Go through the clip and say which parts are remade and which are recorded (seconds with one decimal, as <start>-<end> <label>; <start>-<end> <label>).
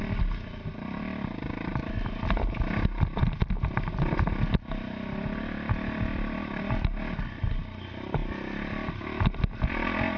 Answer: 0.0-10.2 recorded